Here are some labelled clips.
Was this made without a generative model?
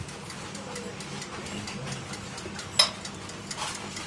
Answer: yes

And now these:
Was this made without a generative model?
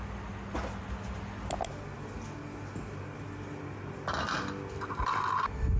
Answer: yes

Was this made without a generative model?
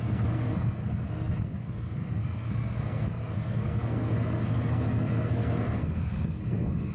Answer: no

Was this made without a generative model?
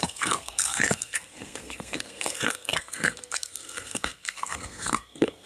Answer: no